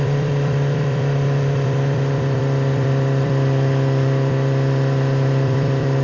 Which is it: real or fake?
fake